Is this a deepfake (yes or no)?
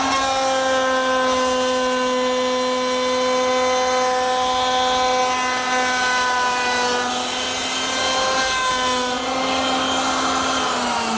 no